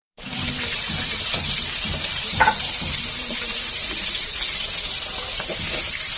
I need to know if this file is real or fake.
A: fake